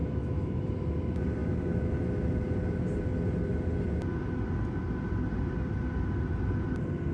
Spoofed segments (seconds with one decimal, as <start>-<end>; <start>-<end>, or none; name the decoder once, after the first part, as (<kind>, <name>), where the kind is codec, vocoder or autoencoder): 0.0-0.7 (autoencoder, DAC-VAE); 1.4-1.9